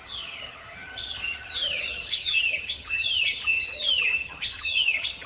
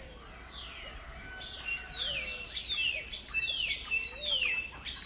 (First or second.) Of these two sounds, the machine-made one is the first